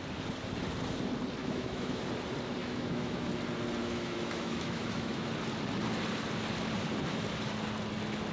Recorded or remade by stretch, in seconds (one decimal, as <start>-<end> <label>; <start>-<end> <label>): 0.0-1.4 recorded; 1.4-2.0 remade; 2.0-2.6 recorded; 2.6-3.3 remade; 3.3-3.8 recorded; 3.8-5.3 remade; 5.3-8.3 recorded